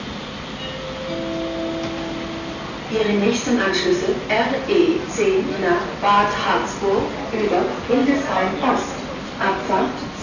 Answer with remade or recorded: recorded